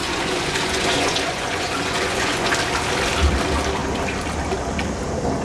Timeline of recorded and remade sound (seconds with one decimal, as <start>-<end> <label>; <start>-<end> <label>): 0.0-2.5 remade; 2.5-5.4 recorded